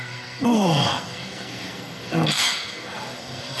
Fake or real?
fake